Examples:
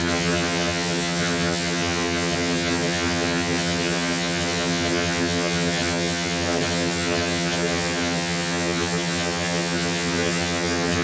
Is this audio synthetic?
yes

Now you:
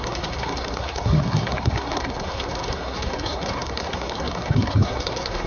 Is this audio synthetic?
yes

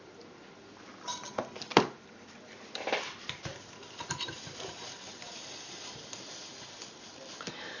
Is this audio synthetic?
yes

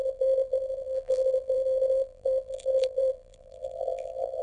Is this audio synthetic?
yes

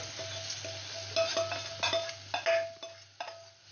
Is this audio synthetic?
no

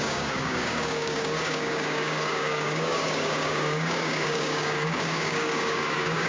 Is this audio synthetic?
yes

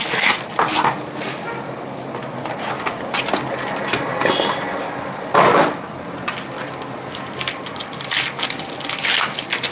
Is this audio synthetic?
no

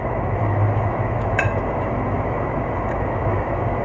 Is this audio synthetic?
yes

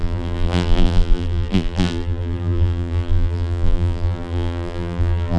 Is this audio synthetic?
yes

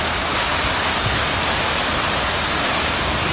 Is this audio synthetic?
no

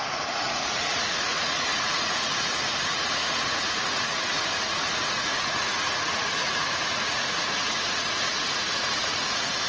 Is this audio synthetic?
yes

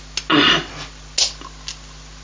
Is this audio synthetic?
no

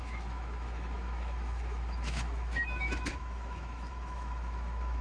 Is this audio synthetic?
yes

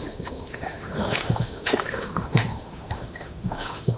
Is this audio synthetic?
yes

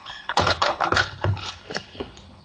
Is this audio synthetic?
yes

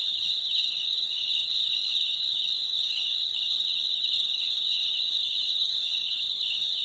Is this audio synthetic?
yes